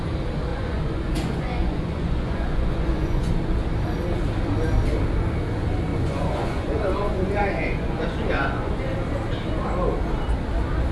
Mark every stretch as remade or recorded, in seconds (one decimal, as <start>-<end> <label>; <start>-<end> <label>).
0.0-0.5 recorded; 0.5-3.3 remade; 3.3-5.9 recorded; 5.9-8.7 remade; 8.7-10.9 recorded